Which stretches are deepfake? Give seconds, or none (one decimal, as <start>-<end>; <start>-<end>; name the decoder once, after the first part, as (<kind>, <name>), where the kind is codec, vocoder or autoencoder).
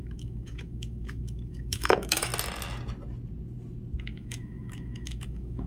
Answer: 0.0-2.3 (autoencoder, DAC-VAE); 4.0-5.7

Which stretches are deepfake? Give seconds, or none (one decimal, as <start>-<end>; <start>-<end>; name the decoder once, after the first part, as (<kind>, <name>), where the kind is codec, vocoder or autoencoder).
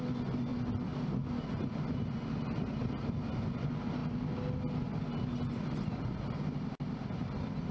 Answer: none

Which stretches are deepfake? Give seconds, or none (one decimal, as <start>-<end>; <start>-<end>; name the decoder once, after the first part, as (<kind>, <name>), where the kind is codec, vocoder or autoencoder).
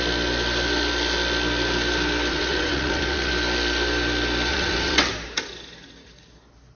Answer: 2.3-3.3 (vocoder, WaveNeXt); 4.5-5.1